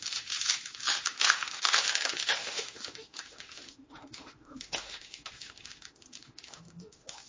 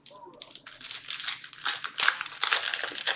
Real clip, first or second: second